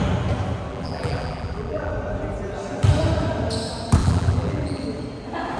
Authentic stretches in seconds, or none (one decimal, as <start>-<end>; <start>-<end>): 0.0-0.7; 1.9-4.0; 4.8-5.6

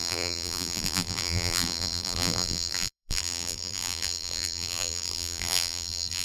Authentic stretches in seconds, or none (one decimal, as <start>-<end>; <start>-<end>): none

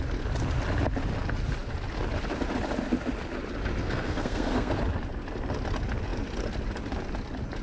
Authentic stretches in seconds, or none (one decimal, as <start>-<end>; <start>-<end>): 0.0-3.8; 4.7-7.6

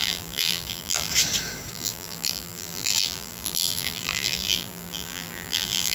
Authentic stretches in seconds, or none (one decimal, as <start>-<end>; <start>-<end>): 1.1-1.7

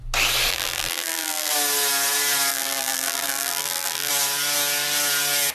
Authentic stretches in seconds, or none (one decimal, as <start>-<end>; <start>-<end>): 0.0-0.5; 1.5-2.5; 4.1-5.5

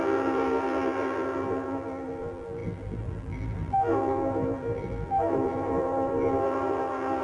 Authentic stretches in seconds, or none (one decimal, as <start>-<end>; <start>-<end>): none

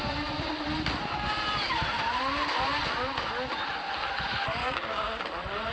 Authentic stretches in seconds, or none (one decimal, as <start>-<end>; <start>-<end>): 0.0-4.6; 5.2-5.7